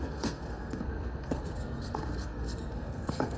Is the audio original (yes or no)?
no